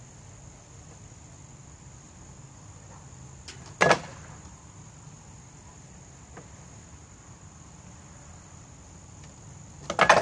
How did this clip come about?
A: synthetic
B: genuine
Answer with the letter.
B